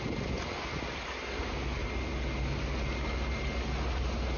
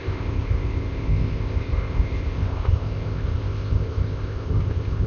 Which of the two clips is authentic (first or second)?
first